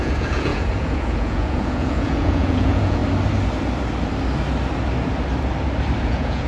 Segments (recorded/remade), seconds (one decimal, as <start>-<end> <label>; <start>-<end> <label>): 0.0-3.0 remade; 3.0-6.0 recorded; 6.0-6.5 remade